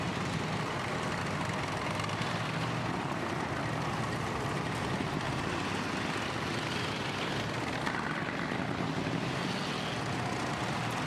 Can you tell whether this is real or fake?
real